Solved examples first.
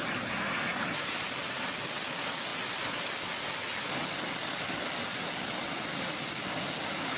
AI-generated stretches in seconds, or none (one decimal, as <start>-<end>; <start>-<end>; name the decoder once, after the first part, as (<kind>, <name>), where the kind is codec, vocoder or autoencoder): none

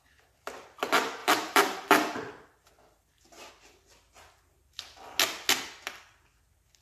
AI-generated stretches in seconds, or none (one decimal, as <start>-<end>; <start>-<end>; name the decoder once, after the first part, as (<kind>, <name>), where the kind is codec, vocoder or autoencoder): 1.2-3.5 (vocoder, BigVGAN v2)

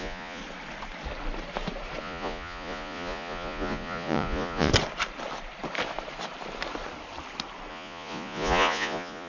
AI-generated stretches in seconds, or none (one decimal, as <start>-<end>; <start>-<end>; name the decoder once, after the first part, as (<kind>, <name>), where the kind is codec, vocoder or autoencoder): 0.0-0.4 (vocoder, Vocos); 2.0-4.7; 7.7-9.3

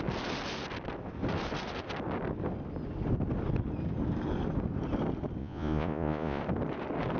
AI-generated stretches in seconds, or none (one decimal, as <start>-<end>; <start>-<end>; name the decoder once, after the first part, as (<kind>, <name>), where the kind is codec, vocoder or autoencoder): 5.4-6.4 (vocoder, Vocos)

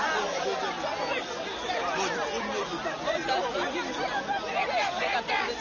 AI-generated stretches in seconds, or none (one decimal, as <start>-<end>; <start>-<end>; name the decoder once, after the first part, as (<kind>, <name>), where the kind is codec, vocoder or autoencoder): none

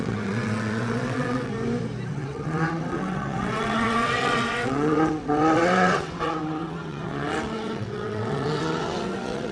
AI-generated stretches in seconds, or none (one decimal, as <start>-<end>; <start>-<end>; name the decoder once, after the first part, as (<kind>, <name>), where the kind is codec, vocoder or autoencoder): 0.0-1.5 (vocoder, WaveNeXt); 2.1-9.5

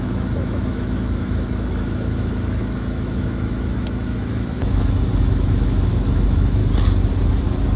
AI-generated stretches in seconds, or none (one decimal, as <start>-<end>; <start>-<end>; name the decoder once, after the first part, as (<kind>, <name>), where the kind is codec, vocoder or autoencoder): 0.0-6.6 (autoencoder, DAC-VAE)